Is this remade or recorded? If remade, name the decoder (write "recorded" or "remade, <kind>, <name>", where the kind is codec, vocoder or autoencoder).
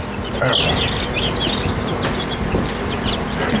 recorded